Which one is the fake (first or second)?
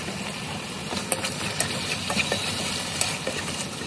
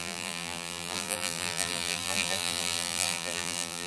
second